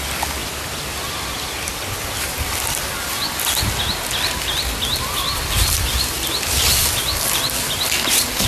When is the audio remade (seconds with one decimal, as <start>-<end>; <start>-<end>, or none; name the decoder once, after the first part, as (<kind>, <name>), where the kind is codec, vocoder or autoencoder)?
none